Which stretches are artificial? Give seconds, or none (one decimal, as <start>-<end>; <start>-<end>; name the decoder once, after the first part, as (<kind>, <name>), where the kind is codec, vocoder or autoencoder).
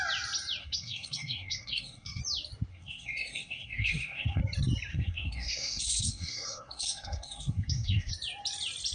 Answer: 0.6-2.2 (codec, SNAC); 2.7-4.4; 4.9-8.1